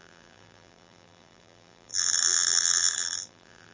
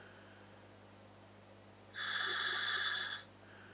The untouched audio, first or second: second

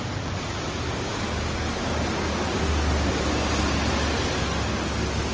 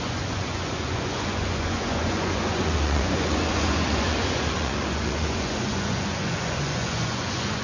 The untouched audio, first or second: first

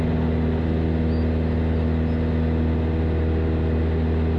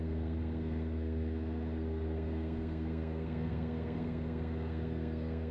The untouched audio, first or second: first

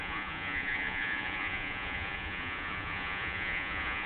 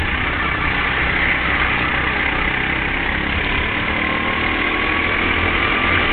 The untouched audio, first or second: second